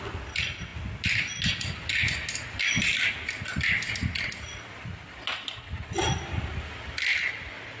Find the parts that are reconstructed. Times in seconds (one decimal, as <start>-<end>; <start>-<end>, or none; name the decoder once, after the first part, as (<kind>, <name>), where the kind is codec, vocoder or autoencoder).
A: none